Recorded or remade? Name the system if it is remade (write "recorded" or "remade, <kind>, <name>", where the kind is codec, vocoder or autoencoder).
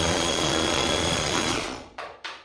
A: remade, vocoder, Vocos